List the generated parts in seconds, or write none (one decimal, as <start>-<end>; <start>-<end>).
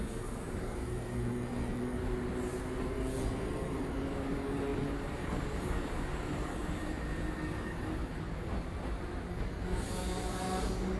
0.0-2.0; 2.9-8.5; 9.3-11.0